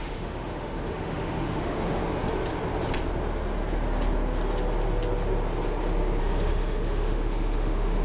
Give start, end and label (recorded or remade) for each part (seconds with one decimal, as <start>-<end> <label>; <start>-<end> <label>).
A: 0.0-2.0 remade; 2.0-6.2 recorded; 6.2-8.0 remade

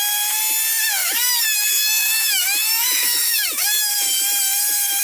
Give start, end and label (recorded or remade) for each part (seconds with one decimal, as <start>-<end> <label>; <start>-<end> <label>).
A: 0.0-1.0 recorded; 1.0-3.9 remade; 3.9-5.0 recorded

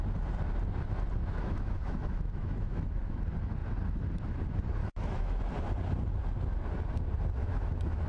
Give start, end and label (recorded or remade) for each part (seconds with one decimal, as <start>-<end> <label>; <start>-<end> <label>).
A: 0.0-1.2 recorded; 1.2-3.2 remade; 3.2-4.8 recorded; 4.8-5.4 remade; 5.4-7.4 recorded; 7.4-8.1 remade

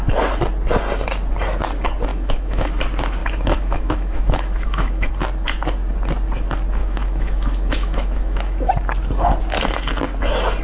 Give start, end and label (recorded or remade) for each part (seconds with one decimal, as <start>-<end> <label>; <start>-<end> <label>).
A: 0.0-2.1 recorded; 2.1-2.7 remade; 2.7-3.2 recorded; 3.2-5.1 remade; 5.1-6.8 recorded; 6.8-8.7 remade; 8.7-10.6 recorded